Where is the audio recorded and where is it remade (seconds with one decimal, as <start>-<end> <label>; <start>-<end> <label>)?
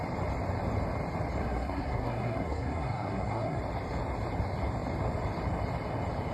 0.0-1.4 recorded; 1.4-3.6 remade; 3.6-6.3 recorded